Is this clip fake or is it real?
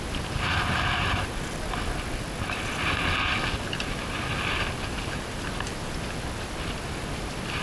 real